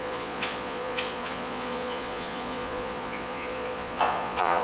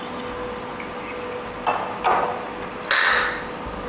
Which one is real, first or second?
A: second